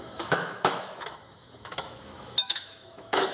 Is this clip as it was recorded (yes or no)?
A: no